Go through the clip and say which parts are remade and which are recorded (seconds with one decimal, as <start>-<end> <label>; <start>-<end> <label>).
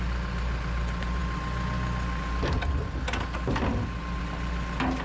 0.0-5.0 recorded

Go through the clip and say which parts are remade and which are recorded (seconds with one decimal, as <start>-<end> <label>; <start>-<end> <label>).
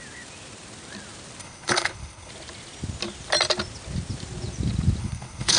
0.0-1.4 recorded; 1.4-2.3 remade; 2.3-5.0 recorded; 5.0-5.6 remade